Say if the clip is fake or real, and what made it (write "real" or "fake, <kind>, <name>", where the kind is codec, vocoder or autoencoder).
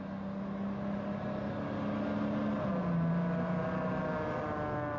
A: real